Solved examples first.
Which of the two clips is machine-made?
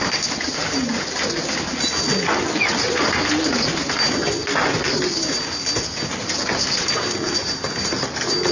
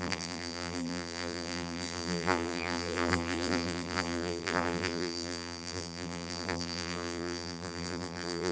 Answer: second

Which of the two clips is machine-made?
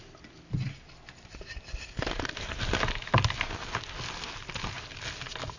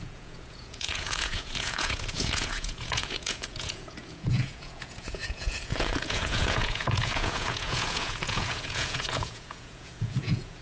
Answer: second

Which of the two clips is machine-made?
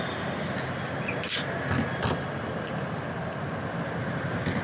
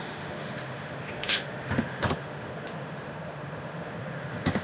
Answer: second